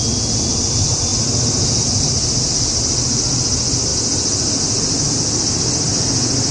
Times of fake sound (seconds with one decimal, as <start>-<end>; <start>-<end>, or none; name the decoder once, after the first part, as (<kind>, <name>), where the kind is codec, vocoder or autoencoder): none